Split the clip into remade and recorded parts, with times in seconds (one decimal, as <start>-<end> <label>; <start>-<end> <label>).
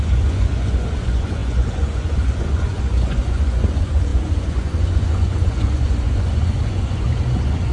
0.0-7.7 remade